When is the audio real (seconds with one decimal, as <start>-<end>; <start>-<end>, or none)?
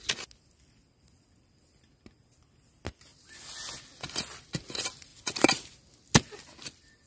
0.0-7.1